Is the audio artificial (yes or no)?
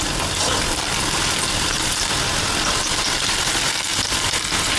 no